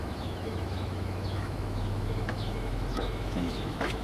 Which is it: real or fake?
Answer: fake